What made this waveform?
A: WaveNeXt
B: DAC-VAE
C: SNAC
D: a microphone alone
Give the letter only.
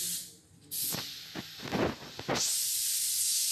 D